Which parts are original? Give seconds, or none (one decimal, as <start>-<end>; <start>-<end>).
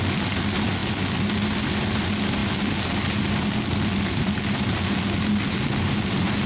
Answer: 0.0-6.5